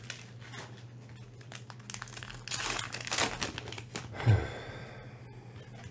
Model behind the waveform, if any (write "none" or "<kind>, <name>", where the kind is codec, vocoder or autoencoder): none